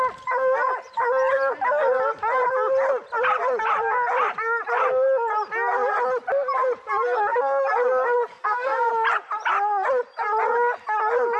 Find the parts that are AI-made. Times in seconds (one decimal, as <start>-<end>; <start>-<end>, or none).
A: 8.3-8.9

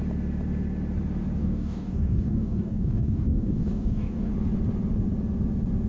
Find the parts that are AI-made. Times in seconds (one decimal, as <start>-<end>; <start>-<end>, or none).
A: 1.4-4.3

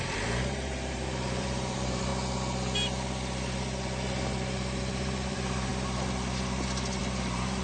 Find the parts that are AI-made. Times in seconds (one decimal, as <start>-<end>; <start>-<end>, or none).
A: 0.0-2.1; 4.8-5.7; 7.0-7.6

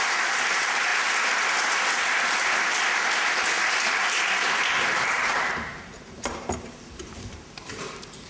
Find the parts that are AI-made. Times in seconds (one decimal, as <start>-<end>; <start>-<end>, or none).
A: 0.0-0.9; 4.9-8.3

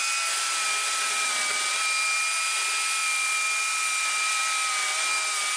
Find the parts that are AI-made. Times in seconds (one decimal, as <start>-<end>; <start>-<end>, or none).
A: none

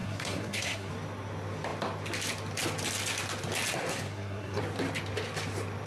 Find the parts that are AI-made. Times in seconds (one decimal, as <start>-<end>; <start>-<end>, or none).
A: 0.0-0.9; 3.9-4.6

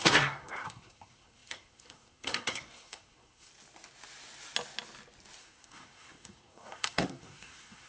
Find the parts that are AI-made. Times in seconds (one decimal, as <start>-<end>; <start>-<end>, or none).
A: 0.0-3.5; 5.4-7.9